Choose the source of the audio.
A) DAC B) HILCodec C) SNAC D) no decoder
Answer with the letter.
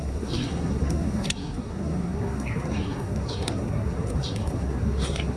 C